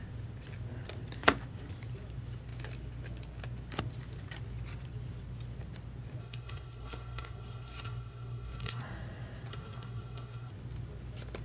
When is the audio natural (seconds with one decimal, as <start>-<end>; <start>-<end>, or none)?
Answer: 0.0-6.2; 8.8-9.5; 10.5-11.4